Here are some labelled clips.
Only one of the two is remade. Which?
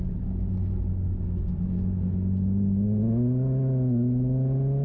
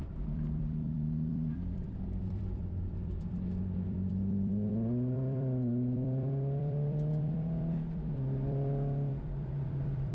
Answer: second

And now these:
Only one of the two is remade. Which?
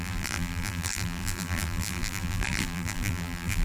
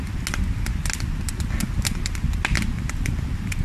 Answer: first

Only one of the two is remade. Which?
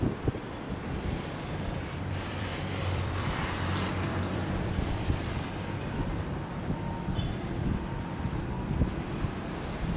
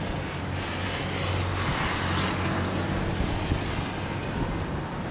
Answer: first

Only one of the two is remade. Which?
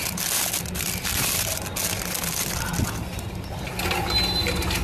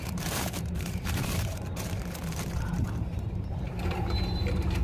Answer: second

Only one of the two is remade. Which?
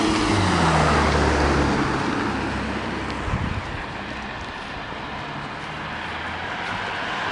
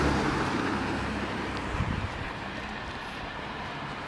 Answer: second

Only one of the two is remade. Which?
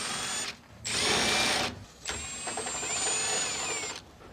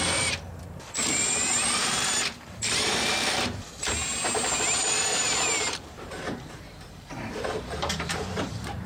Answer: second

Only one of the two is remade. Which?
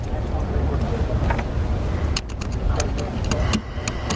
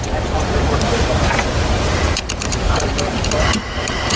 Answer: second